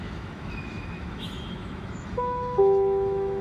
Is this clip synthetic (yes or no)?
yes